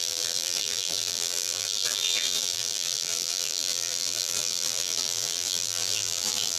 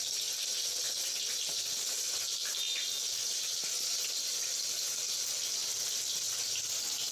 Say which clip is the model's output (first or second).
first